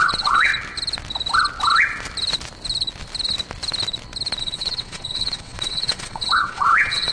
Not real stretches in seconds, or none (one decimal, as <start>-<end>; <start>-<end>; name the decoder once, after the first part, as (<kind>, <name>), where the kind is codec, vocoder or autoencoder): 0.0-0.5 (vocoder, WaveNeXt); 4.4-7.1